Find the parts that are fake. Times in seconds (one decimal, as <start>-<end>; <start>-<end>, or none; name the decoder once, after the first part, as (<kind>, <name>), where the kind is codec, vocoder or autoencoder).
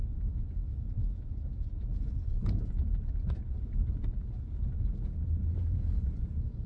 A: 0.0-3.1 (vocoder, Vocos); 5.4-6.7